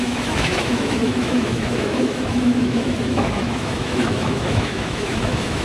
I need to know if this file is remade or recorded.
remade